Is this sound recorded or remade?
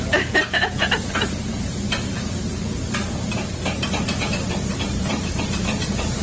remade